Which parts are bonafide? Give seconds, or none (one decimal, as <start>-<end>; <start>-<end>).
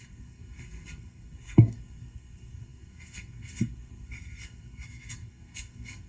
none